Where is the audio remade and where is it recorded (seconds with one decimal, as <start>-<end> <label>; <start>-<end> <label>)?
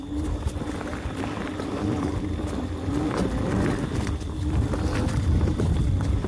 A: 0.0-0.9 recorded; 0.9-4.7 remade; 4.7-6.3 recorded